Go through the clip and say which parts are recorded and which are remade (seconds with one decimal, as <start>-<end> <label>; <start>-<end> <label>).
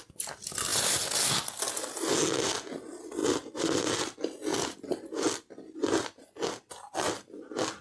0.0-7.8 recorded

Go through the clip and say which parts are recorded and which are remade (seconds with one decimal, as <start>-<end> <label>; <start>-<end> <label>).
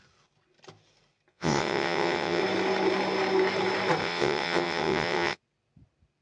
0.0-1.3 recorded; 1.3-2.4 remade; 2.4-4.0 recorded; 4.0-5.4 remade; 5.4-6.2 recorded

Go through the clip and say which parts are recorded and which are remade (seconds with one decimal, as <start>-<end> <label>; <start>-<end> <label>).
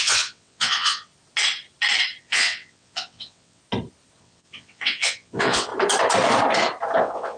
0.0-1.1 remade; 1.1-2.2 recorded; 2.2-3.6 remade; 3.6-4.2 recorded; 4.2-5.7 remade; 5.7-7.0 recorded; 7.0-7.4 remade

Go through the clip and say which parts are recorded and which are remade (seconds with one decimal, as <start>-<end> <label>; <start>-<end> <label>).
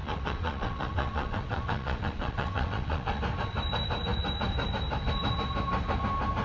0.0-3.2 remade; 3.2-6.4 recorded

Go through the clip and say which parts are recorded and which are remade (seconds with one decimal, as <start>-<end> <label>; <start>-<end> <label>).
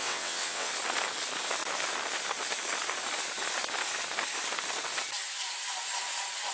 0.0-0.7 remade; 0.7-6.5 recorded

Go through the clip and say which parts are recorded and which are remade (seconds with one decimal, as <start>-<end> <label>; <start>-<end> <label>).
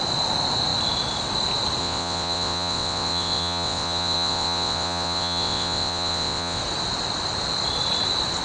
0.0-1.8 recorded; 1.8-6.6 remade; 6.6-8.4 recorded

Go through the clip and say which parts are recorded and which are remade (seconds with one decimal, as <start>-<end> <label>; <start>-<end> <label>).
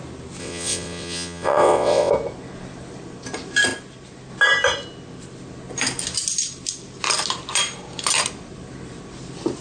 0.0-0.4 recorded; 0.4-2.1 remade; 2.1-9.6 recorded